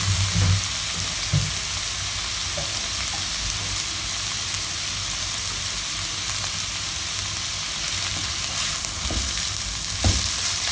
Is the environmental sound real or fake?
real